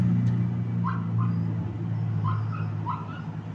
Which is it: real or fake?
real